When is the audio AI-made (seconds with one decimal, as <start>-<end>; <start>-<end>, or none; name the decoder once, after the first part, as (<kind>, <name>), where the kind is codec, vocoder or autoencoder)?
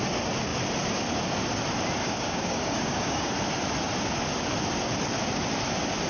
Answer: 2.0-3.3 (codec, DAC)